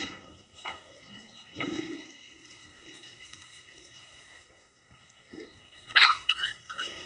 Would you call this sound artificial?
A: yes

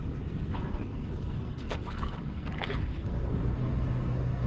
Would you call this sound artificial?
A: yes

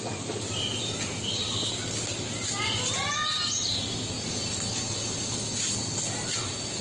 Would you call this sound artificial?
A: no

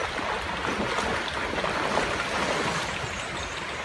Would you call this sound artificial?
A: no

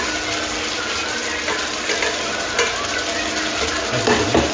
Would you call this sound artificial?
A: no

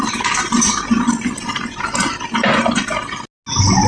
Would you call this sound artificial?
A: no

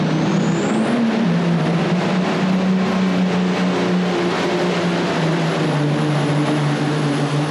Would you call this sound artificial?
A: no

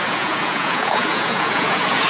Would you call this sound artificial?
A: yes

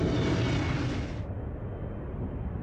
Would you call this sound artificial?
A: no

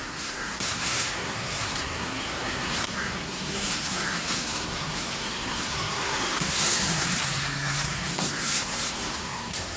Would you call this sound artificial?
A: yes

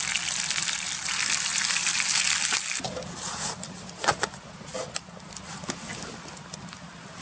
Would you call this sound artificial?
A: no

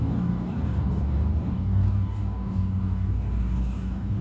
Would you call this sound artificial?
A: yes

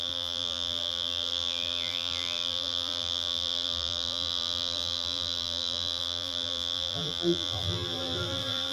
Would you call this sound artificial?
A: yes